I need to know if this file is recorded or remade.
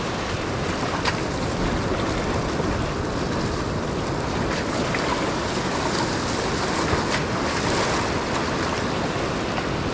recorded